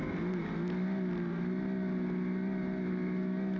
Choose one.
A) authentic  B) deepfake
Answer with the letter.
A